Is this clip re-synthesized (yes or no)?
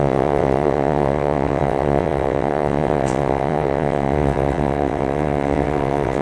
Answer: yes